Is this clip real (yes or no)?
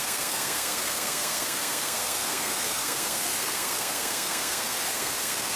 no